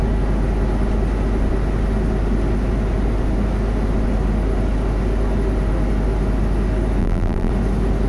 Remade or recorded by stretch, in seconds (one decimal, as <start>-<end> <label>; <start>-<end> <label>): 0.0-7.0 recorded; 7.0-7.5 remade; 7.5-8.1 recorded